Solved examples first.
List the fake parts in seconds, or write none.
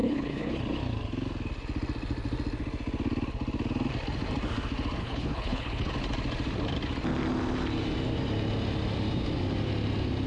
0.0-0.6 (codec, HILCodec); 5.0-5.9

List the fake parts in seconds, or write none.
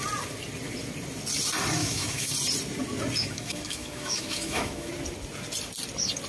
1.8-2.3 (autoencoder, DAC-VAE); 3.2-4.9